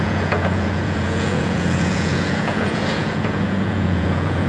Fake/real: fake